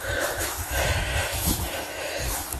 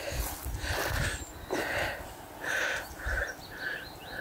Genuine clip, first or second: second